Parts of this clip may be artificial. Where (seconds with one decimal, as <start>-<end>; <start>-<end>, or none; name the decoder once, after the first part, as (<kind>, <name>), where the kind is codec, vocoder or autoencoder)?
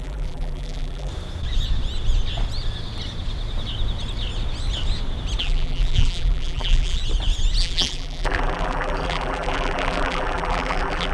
0.0-1.1 (vocoder, BigVGAN v2); 5.4-7.0; 7.6-11.1